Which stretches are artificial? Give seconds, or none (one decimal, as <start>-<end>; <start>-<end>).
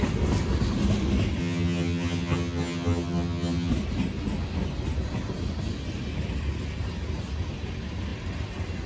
1.4-3.7